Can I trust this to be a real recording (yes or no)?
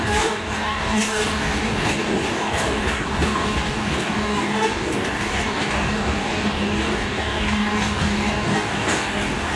no